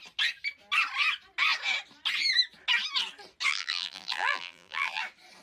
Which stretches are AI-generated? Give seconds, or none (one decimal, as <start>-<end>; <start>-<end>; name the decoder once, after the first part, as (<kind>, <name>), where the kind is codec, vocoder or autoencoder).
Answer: 3.5-5.0 (vocoder, BigVGAN v2)